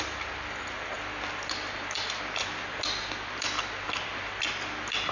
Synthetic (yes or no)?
no